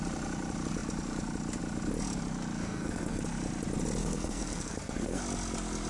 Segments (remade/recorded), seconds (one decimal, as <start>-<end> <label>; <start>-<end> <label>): 0.0-2.6 recorded; 2.6-3.2 remade; 3.2-4.0 recorded; 4.0-5.2 remade; 5.2-5.9 recorded